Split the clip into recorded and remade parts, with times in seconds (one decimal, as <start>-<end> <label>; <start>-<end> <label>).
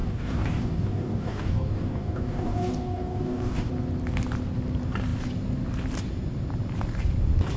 0.0-3.7 remade; 3.7-7.6 recorded